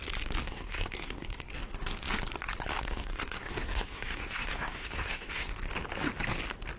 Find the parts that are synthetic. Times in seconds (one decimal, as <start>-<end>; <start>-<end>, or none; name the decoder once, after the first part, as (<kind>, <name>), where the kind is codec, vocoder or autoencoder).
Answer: 0.4-1.5 (codec, SNAC); 2.9-5.5